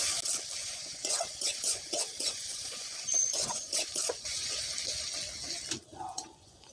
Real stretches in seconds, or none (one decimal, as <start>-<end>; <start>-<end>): 0.0-0.6; 4.6-5.9